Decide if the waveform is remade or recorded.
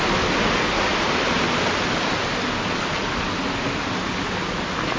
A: recorded